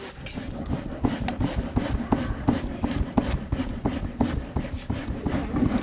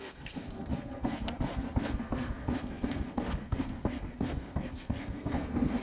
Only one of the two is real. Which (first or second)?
first